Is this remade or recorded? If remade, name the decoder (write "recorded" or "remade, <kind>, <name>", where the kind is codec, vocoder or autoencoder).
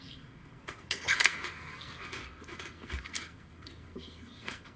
remade, codec, SNAC